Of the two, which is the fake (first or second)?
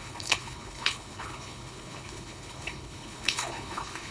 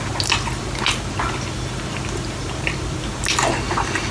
first